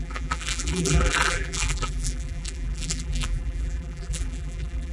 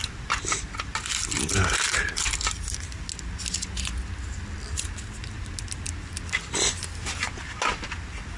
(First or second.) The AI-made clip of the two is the first